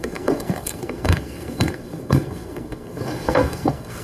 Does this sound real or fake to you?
fake